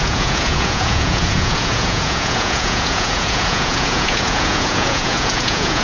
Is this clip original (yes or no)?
no